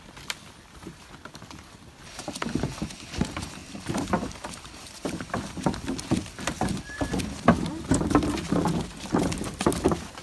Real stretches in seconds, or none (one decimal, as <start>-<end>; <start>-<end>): 0.0-3.6; 6.7-10.2